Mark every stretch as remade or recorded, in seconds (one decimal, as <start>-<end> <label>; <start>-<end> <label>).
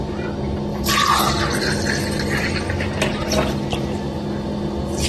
0.0-0.7 recorded; 0.7-3.5 remade; 3.5-5.1 recorded